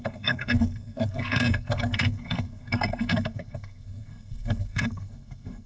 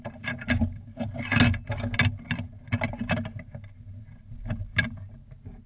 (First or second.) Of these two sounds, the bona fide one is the second